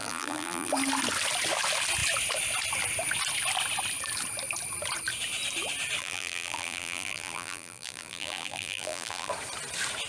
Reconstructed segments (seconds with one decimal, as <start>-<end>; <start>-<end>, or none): 0.0-0.7; 6.0-9.3